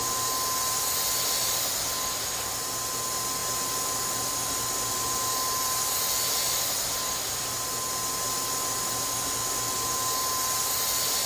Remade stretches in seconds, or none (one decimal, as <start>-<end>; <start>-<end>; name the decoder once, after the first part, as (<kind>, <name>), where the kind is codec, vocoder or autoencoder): none